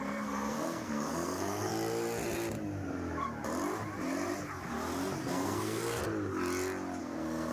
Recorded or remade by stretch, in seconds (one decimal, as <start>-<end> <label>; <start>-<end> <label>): 0.0-1.7 remade; 1.7-5.2 recorded; 5.2-6.0 remade; 6.0-7.0 recorded; 7.0-7.5 remade